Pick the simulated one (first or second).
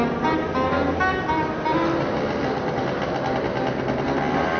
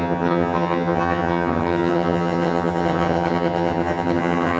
second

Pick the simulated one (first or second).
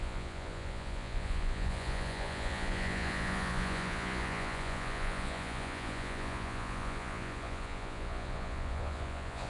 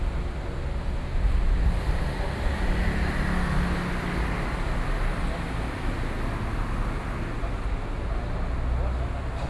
first